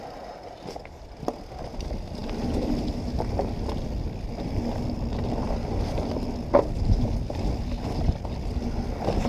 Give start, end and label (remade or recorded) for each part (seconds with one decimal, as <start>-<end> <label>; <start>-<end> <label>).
0.0-9.3 recorded